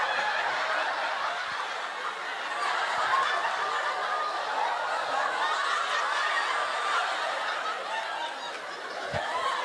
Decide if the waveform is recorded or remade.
recorded